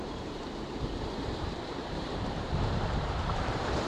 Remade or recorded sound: remade